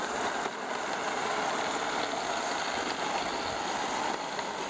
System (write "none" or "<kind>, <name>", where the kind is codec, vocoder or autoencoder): none